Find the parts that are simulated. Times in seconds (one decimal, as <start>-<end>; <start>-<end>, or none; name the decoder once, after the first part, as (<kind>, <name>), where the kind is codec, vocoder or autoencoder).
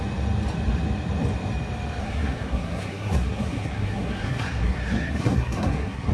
2.0-6.1 (codec, SNAC)